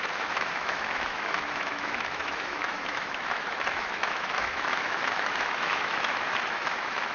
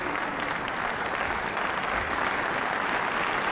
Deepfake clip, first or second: first